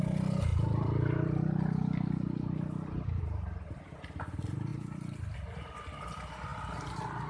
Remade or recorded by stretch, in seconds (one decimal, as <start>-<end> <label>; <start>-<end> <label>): 0.0-0.5 recorded; 0.5-3.2 remade; 3.2-4.7 recorded; 4.7-5.7 remade; 5.7-7.3 recorded

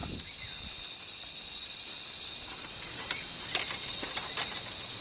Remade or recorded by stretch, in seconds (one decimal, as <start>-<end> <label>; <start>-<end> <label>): 0.0-3.0 remade; 3.0-5.0 recorded

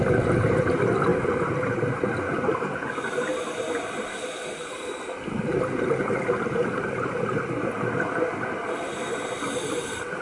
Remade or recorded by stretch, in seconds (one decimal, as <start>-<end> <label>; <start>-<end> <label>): 0.0-10.2 recorded